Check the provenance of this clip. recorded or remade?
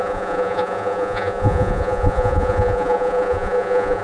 remade